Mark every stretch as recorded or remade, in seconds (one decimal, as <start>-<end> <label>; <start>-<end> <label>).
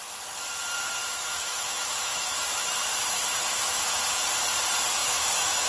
0.0-1.0 recorded; 1.0-4.2 remade; 4.2-5.0 recorded; 5.0-5.7 remade